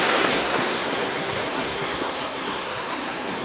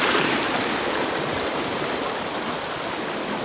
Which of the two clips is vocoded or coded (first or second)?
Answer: first